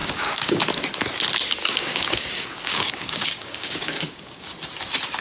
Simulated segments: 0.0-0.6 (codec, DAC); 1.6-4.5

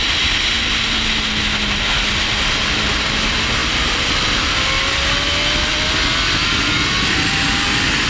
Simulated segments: none